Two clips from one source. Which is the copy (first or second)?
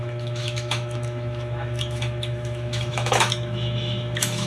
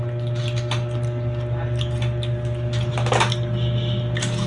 first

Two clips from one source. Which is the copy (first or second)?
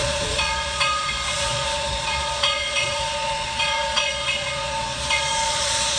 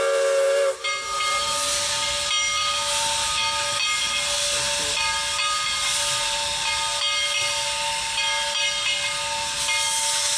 first